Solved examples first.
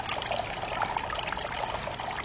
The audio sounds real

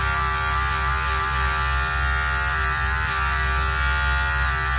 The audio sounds real